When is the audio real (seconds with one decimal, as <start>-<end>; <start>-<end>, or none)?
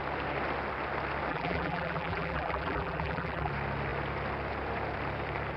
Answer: 0.0-1.3; 3.5-5.6